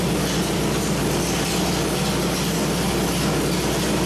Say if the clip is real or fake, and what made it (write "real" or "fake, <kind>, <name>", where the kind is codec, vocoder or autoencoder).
real